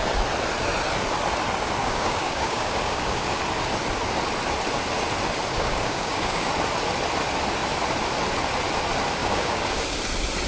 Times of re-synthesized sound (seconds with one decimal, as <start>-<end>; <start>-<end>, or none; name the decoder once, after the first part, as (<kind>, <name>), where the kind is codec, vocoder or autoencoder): 1.8-3.4 (codec, DAC); 5.5-6.5; 9.2-10.0